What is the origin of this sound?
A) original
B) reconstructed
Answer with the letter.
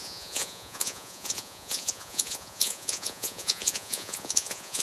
B